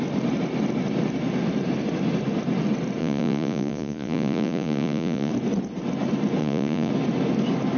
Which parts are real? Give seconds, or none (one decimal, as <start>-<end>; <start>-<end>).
0.0-3.0; 5.3-6.4; 6.9-7.8